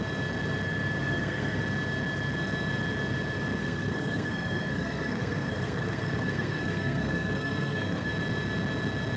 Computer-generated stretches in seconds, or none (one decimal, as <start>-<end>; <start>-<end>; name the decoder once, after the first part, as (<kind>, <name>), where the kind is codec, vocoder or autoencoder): 1.0-1.6 (codec, SNAC); 3.6-8.1

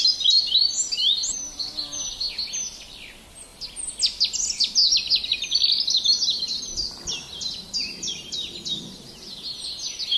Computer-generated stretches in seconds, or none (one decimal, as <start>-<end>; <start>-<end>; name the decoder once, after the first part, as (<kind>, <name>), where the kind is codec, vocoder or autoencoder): none

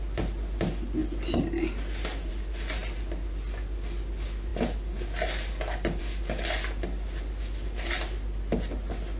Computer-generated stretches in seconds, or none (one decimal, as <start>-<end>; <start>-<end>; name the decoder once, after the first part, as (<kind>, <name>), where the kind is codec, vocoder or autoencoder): none

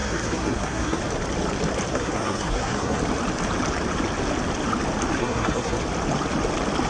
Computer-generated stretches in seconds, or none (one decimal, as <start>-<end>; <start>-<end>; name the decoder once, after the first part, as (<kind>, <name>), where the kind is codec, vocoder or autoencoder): 0.0-1.0 (codec, SNAC); 1.9-3.0; 5.2-5.8

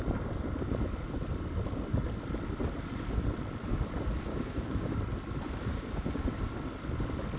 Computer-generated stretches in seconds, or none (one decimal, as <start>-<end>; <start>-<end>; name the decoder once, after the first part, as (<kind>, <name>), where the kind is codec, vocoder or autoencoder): 4.3-5.0 (codec, DAC); 5.7-6.4